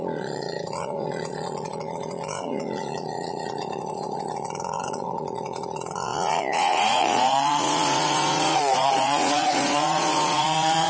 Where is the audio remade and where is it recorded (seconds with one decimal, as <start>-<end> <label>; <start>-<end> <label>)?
0.0-10.9 remade